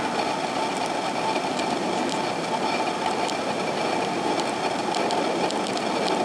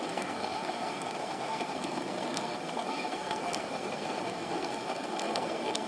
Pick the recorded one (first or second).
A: first